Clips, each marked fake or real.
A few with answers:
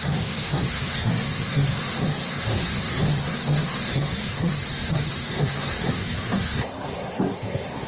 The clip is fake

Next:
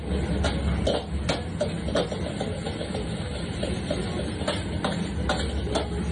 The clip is real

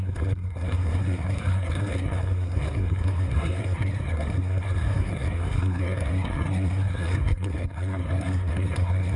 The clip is fake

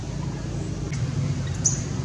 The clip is real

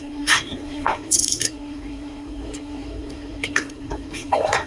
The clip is fake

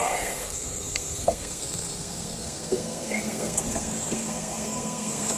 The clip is fake